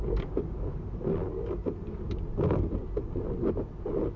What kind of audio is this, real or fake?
real